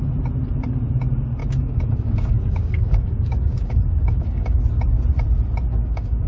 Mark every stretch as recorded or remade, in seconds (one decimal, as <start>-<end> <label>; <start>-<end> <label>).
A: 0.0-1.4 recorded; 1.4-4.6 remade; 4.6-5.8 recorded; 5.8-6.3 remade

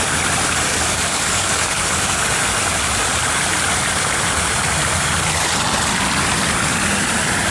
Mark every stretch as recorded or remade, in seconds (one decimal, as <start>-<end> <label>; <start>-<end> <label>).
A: 0.0-0.7 recorded; 0.7-2.3 remade; 2.3-7.5 recorded

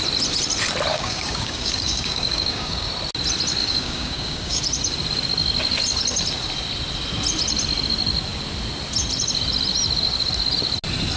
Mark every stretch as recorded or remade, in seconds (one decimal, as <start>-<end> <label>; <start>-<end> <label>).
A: 0.0-0.9 recorded; 0.9-2.9 remade; 2.9-3.6 recorded; 3.6-4.6 remade; 4.6-11.2 recorded